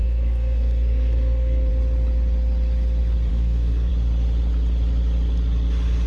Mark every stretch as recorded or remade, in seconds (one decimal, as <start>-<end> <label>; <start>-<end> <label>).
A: 0.0-1.7 remade; 1.7-3.3 recorded; 3.3-3.9 remade; 3.9-6.1 recorded